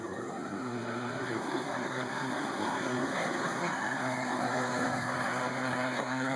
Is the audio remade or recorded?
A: remade